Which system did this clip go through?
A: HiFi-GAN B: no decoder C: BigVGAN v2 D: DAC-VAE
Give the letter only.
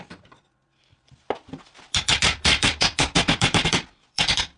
C